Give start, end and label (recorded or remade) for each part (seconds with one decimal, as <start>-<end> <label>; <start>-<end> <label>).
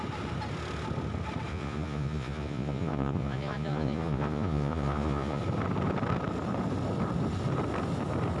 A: 0.0-1.5 recorded; 1.5-5.4 remade; 5.4-8.4 recorded